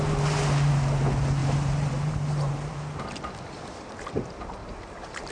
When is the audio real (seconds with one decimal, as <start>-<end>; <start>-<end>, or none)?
0.0-1.4; 3.0-4.6